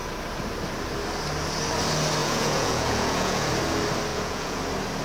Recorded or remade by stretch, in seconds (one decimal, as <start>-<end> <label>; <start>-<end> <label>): 0.0-2.2 recorded; 2.2-3.5 remade; 3.5-4.1 recorded; 4.1-4.6 remade; 4.6-5.0 recorded